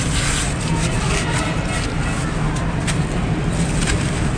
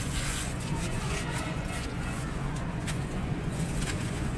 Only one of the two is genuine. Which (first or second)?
first